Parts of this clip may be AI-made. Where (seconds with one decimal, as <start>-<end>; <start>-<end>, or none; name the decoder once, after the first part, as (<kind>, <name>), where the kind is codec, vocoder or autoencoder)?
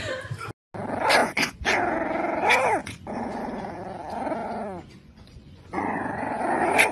1.2-1.8 (vocoder, Vocos); 2.8-3.4; 4.4-6.4